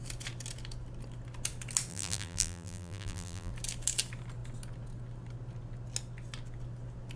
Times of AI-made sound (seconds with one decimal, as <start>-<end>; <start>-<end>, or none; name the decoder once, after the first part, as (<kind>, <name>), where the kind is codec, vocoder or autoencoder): 1.9-3.5 (vocoder, BigVGAN v2)